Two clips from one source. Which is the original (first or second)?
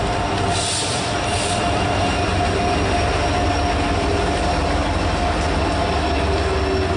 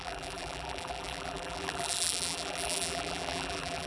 first